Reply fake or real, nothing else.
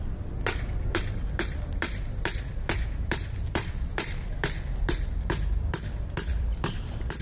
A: fake